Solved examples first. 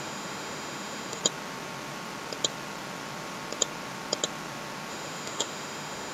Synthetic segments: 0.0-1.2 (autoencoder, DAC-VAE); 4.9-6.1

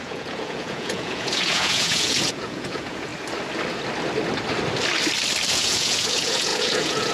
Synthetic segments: 0.0-3.1 (vocoder, Vocos); 5.5-7.1

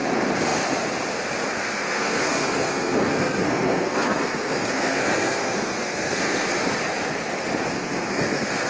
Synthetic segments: 1.6-6.5 (codec, SNAC); 7.7-8.7